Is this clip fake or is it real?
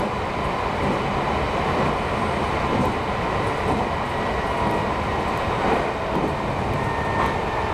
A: real